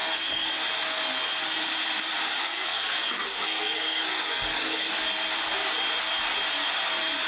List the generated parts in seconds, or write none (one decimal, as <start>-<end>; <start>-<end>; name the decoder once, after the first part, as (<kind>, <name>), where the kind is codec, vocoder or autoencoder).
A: 0.0-0.5 (codec, SNAC); 2.4-4.9